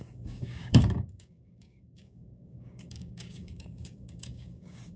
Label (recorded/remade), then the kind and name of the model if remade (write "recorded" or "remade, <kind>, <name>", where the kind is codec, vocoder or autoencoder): remade, codec, DAC